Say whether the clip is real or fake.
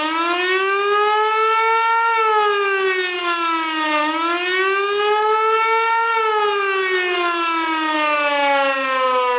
real